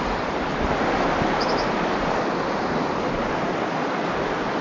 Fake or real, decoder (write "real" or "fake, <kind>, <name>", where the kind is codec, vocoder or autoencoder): fake, vocoder, BigVGAN v2